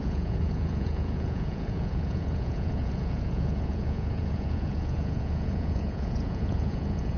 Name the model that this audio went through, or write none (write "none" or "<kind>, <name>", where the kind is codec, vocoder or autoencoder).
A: vocoder, Vocos